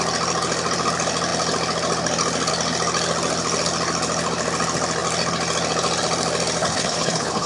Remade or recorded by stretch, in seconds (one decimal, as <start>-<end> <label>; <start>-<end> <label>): 0.0-6.6 recorded; 6.6-7.5 remade